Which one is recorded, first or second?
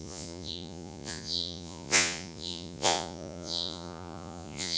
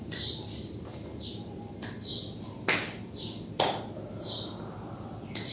second